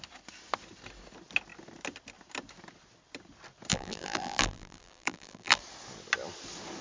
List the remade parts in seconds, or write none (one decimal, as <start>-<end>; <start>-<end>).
3.7-5.6